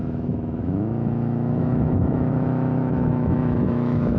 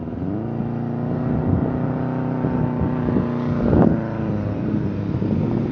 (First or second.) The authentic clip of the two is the second